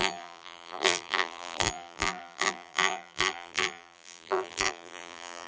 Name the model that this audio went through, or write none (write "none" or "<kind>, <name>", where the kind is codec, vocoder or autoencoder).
vocoder, BigVGAN v2